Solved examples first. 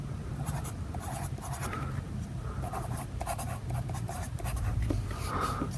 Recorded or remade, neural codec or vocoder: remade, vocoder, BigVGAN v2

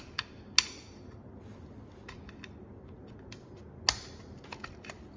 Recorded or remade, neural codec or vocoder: recorded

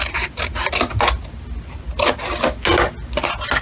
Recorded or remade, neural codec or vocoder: recorded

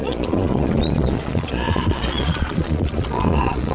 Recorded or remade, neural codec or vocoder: remade, vocoder, Vocos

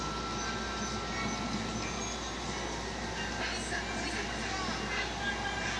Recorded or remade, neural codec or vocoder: recorded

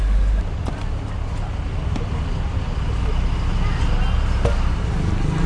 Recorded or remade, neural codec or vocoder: recorded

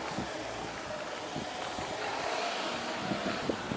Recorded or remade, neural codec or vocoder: recorded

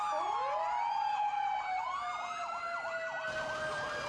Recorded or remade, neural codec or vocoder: remade, vocoder, BigVGAN v2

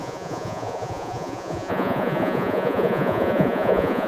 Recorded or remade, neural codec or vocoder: remade, vocoder, Vocos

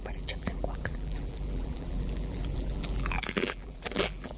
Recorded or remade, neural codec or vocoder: remade, vocoder, BigVGAN v2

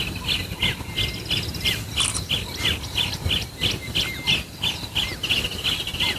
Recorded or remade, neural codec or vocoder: recorded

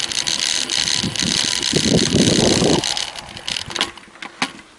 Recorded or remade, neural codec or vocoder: recorded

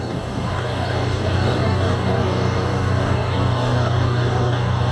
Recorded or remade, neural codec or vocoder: remade, codec, DAC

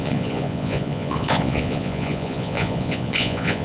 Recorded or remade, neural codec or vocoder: remade, vocoder, Vocos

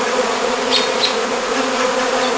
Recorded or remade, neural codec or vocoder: remade, vocoder, Vocos